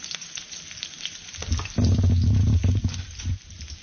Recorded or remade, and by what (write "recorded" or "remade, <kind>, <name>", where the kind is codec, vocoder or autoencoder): recorded